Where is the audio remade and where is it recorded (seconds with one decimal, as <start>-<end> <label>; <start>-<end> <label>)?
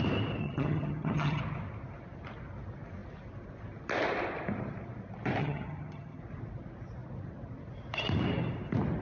0.0-0.4 recorded; 0.4-1.4 remade; 1.4-5.4 recorded; 5.4-6.2 remade; 6.2-9.0 recorded